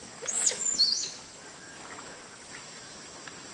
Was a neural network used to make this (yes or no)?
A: yes